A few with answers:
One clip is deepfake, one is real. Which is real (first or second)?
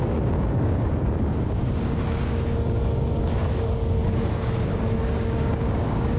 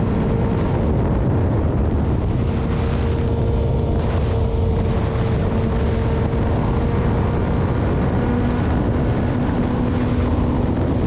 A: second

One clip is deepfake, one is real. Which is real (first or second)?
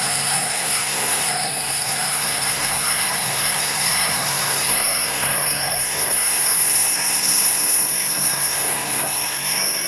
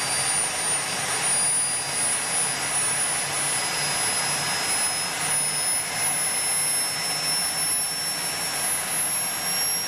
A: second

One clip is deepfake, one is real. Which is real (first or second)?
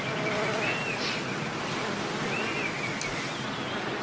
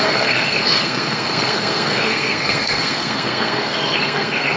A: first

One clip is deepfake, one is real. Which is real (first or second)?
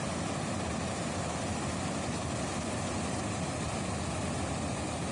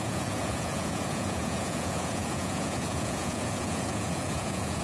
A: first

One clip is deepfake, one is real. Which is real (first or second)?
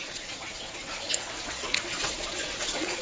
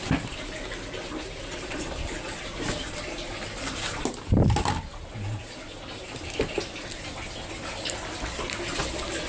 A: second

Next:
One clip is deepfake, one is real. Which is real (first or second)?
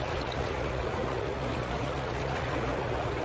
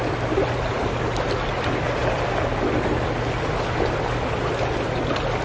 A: second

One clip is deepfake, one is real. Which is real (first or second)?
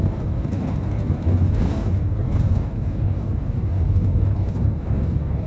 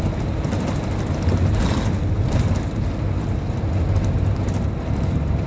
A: second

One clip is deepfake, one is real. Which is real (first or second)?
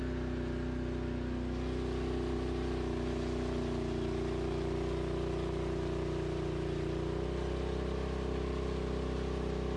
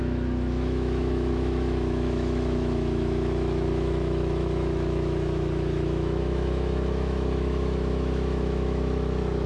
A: first